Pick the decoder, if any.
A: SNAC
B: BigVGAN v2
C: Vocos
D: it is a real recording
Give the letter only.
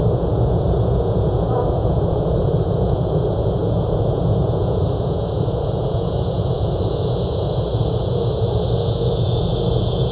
C